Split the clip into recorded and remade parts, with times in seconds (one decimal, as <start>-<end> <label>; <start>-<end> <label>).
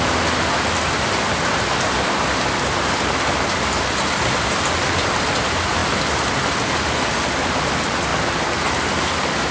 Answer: 0.0-9.5 recorded